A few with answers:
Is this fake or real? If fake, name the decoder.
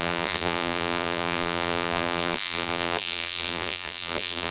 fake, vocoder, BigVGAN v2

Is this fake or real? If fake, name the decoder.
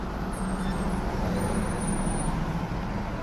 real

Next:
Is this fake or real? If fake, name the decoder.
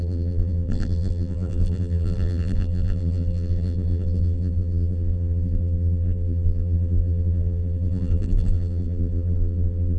fake, vocoder, BigVGAN v2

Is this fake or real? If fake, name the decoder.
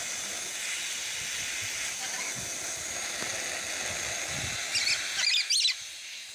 real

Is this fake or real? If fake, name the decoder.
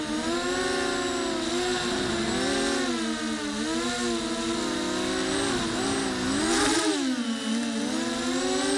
real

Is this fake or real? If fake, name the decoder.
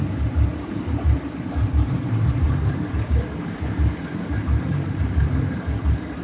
fake, vocoder, BigVGAN v2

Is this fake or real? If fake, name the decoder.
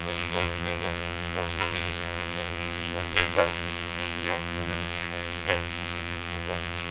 fake, vocoder, BigVGAN v2